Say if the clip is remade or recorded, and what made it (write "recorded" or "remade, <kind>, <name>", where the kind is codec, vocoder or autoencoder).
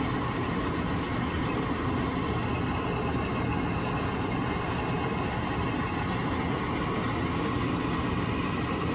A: recorded